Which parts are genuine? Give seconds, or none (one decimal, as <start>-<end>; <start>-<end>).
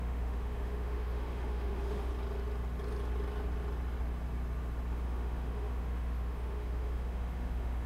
2.1-4.9